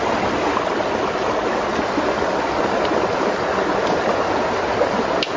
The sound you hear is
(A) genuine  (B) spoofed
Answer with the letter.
A